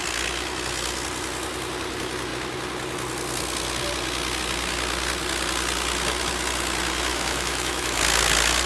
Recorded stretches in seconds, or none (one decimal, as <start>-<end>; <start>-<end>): 0.0-7.1; 8.0-8.7